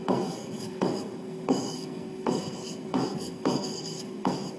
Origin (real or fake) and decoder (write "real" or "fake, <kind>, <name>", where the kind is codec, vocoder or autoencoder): fake, codec, SNAC